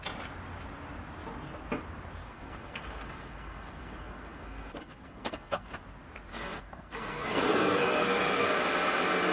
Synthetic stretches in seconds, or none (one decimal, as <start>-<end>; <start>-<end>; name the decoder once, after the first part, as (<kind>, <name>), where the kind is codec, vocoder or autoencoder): 2.2-5.7 (codec, SNAC); 6.3-8.5